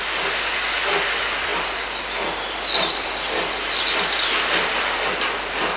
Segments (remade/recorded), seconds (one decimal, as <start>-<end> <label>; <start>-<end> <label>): 0.0-5.8 recorded